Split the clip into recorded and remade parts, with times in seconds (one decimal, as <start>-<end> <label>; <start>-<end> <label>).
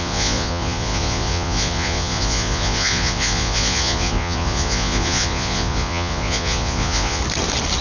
0.0-7.2 remade; 7.2-7.8 recorded